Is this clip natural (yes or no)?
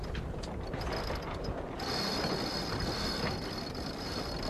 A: yes